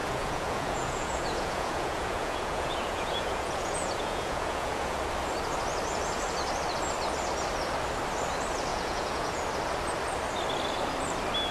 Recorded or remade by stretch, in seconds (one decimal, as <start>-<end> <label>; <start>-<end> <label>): 0.0-5.0 remade; 5.0-8.7 recorded; 8.7-9.4 remade; 9.4-11.5 recorded